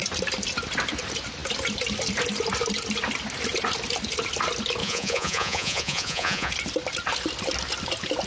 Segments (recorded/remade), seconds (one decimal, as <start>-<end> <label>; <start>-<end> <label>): 0.0-4.8 recorded; 4.8-6.5 remade; 6.5-8.3 recorded